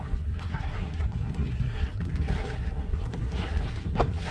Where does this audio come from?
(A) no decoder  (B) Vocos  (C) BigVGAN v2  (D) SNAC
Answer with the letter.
D